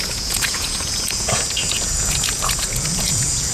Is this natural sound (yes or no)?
no